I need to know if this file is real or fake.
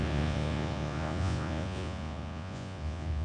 fake